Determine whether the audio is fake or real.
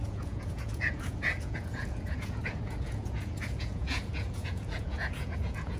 fake